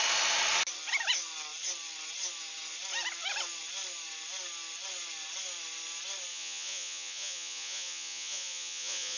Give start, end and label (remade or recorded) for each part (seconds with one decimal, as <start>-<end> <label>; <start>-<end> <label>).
0.0-6.3 recorded; 6.3-9.2 remade